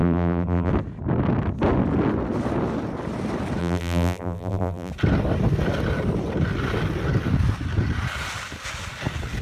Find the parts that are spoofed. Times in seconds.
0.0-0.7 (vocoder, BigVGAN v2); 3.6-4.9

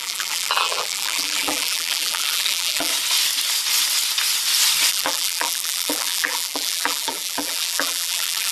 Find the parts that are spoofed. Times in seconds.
0.0-2.9 (vocoder, BigVGAN v2); 4.9-8.5

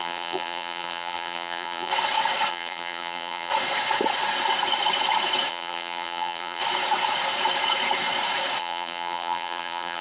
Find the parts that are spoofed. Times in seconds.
0.0-1.9 (vocoder, BigVGAN v2); 2.5-3.5; 5.5-6.6; 8.6-10.0

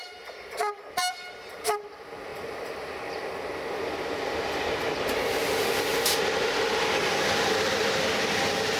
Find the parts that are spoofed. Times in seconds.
none